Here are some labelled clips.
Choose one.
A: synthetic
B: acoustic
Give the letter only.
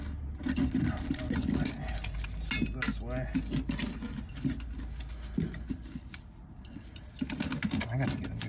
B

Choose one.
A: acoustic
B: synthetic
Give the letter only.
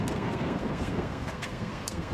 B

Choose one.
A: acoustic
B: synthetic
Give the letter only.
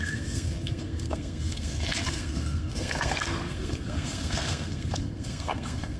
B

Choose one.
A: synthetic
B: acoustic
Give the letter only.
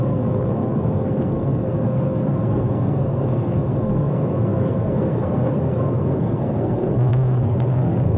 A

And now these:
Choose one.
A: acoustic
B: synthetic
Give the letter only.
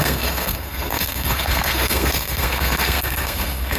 B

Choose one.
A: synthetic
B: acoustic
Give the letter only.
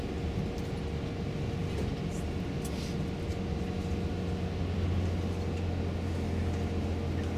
B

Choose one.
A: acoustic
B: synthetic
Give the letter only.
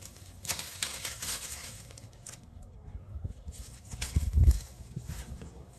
B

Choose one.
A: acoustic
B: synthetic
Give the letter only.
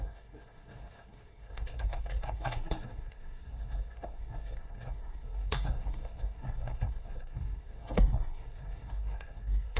B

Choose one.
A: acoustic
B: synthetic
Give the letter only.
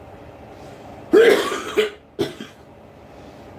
A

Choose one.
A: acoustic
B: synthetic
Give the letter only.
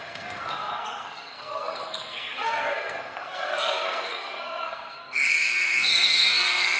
B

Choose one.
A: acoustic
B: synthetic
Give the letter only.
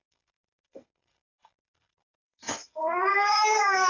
B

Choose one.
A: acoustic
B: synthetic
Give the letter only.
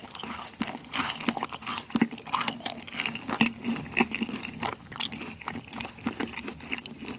A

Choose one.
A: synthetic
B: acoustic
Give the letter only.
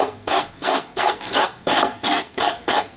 A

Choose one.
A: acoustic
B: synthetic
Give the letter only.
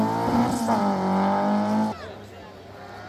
A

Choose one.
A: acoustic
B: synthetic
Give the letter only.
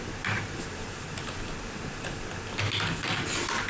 A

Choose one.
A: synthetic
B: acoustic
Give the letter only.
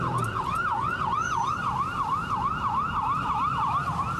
B